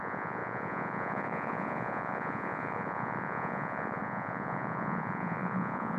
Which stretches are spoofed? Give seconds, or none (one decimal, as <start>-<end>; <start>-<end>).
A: 0.0-6.0